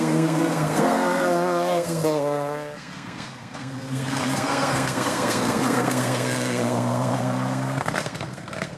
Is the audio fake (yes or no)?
yes